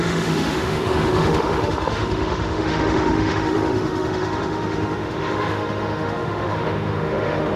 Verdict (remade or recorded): remade